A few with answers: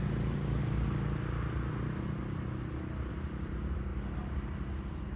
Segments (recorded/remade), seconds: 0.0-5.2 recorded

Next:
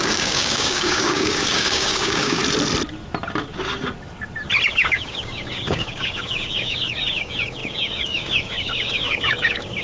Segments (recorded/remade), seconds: 0.0-2.4 remade; 2.4-4.7 recorded; 4.7-9.8 remade

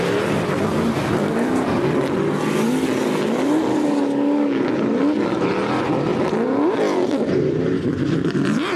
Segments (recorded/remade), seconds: 0.0-1.2 recorded; 1.2-1.8 remade; 1.8-3.7 recorded; 3.7-4.8 remade; 4.8-8.8 recorded

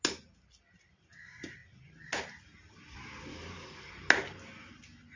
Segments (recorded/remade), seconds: 0.0-3.3 recorded; 3.3-3.9 remade; 3.9-5.2 recorded

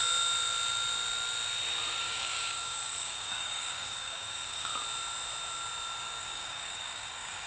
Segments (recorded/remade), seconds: 0.0-2.0 recorded; 2.0-4.7 remade; 4.7-6.2 recorded; 6.2-7.5 remade

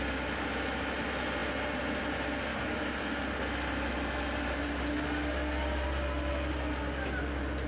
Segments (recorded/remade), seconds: 0.0-2.5 recorded; 2.5-3.2 remade; 3.2-7.7 recorded

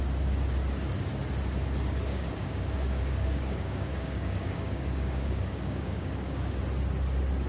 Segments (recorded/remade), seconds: 0.0-2.1 recorded; 2.1-6.6 remade; 6.6-7.5 recorded

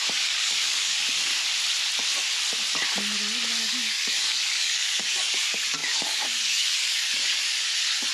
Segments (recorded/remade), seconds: 0.0-1.3 remade; 1.3-3.6 recorded; 3.6-8.1 remade